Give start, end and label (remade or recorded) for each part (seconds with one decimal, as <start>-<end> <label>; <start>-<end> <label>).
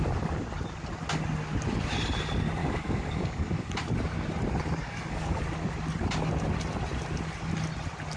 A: 0.0-2.6 recorded; 2.6-3.7 remade; 3.7-4.8 recorded; 4.8-5.4 remade; 5.4-8.2 recorded